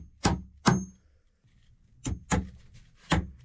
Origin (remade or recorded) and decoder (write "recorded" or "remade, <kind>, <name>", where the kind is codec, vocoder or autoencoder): recorded